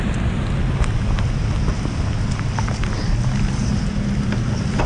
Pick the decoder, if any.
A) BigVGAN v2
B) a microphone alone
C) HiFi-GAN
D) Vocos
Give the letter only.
B